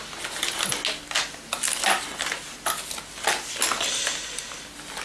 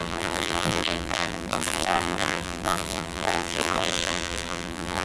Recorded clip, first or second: first